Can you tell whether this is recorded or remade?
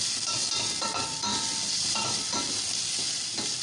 recorded